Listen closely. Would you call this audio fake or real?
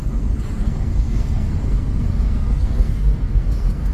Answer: fake